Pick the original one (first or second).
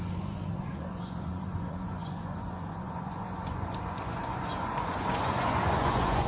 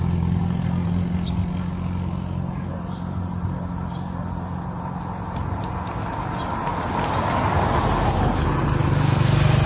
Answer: second